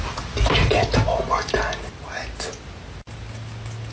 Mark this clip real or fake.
real